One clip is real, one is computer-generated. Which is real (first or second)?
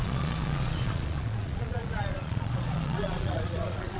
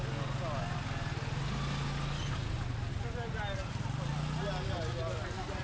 second